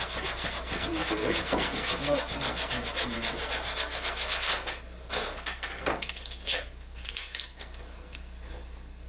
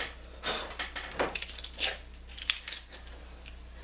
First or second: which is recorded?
second